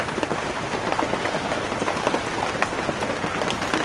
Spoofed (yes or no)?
no